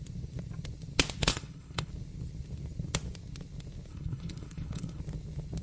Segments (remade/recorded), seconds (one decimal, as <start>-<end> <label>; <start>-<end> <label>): 0.0-1.3 recorded; 1.3-1.9 remade; 1.9-3.9 recorded; 3.9-5.0 remade; 5.0-5.6 recorded